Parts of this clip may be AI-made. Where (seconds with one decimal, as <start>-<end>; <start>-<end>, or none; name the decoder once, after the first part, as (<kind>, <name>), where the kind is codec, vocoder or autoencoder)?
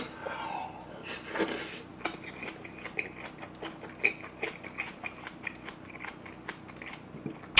none